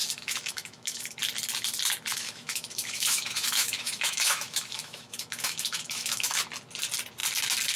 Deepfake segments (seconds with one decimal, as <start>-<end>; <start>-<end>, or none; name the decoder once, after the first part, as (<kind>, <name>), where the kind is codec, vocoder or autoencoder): 0.0-1.2 (autoencoder, DAC-VAE); 2.1-6.4